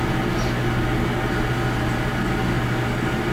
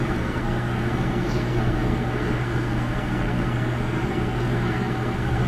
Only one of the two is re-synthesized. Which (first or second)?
second